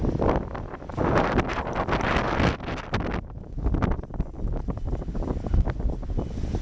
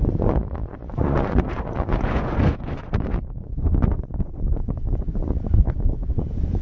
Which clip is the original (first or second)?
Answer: first